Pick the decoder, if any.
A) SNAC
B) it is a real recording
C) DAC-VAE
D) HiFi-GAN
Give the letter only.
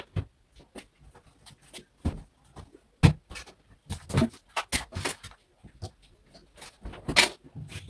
B